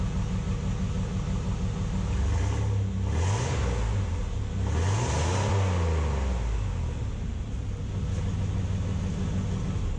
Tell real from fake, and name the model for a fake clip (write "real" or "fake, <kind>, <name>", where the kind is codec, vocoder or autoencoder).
real